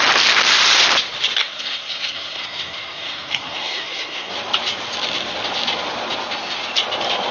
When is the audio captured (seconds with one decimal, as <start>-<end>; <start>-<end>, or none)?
0.0-1.4; 4.3-7.3